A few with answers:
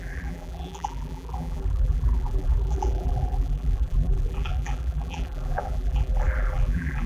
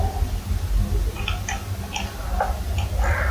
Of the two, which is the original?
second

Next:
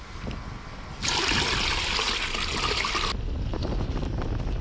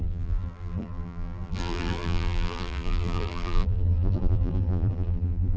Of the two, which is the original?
first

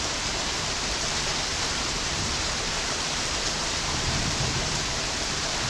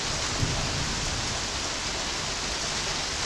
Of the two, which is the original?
second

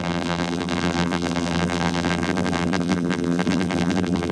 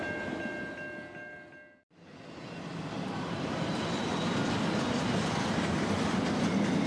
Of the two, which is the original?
second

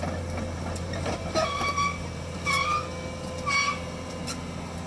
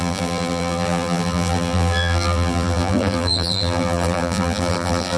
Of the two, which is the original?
first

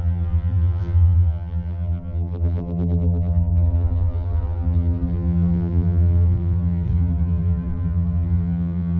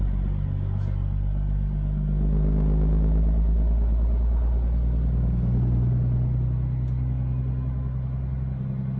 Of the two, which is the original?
second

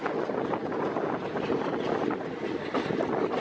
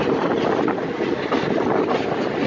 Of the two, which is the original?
first